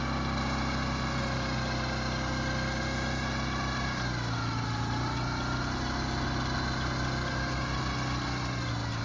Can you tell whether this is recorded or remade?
recorded